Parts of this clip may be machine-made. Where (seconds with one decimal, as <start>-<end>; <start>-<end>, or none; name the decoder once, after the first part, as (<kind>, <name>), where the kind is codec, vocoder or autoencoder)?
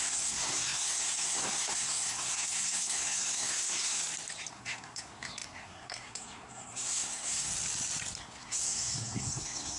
0.0-4.0 (codec, SNAC); 4.5-7.5; 8.2-9.8